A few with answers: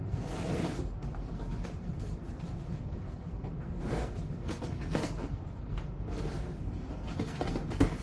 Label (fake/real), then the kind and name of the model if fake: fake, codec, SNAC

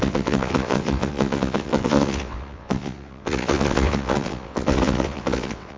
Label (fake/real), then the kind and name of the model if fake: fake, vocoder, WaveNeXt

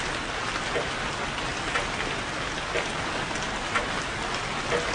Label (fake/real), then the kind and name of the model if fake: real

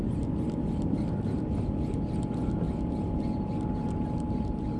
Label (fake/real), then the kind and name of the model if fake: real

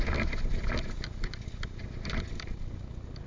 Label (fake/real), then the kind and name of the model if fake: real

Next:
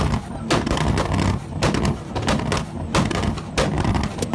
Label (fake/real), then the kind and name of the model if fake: real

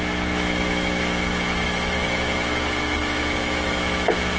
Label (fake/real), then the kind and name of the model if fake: fake, autoencoder, DAC-VAE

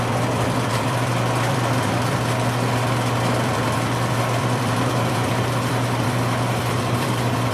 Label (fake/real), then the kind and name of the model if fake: fake, vocoder, BigVGAN v2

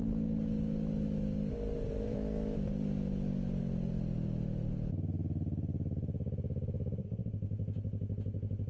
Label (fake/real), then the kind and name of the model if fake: real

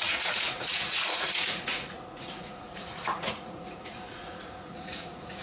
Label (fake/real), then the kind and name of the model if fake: fake, vocoder, Vocos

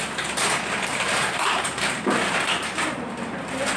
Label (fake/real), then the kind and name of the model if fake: fake, vocoder, BigVGAN v2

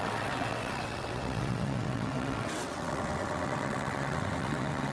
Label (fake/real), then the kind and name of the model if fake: fake, vocoder, WaveNeXt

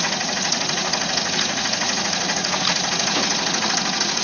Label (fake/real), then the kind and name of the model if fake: fake, vocoder, Vocos